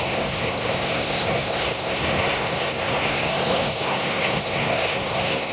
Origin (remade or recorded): remade